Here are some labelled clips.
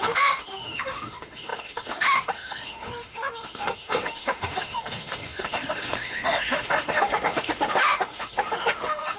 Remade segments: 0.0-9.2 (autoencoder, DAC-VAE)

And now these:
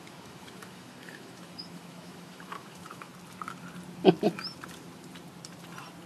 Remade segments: 0.0-3.1 (autoencoder, DAC-VAE)

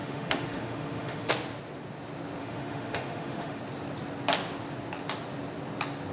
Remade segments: 0.0-1.3 (autoencoder, DAC-VAE); 2.4-3.6

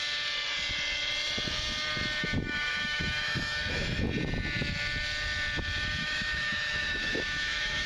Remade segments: 2.2-4.0 (autoencoder, DAC-VAE); 6.0-7.9

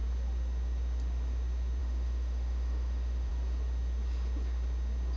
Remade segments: 1.8-3.3 (autoencoder, DAC-VAE)